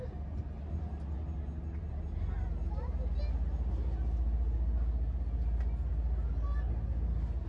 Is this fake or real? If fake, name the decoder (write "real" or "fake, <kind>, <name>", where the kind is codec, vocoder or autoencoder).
real